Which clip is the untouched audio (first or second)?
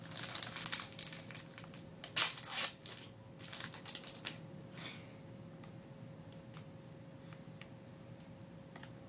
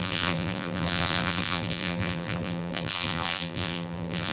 first